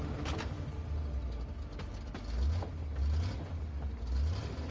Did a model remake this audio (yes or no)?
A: no